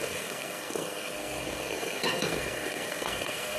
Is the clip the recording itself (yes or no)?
no